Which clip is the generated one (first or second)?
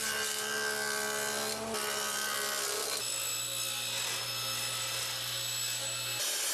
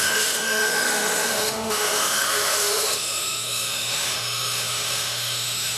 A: second